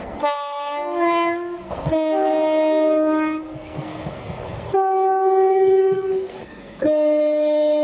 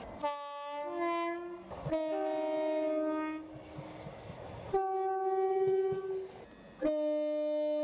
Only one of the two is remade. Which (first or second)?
first